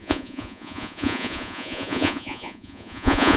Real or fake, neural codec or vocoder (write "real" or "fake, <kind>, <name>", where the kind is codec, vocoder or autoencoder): fake, vocoder, Vocos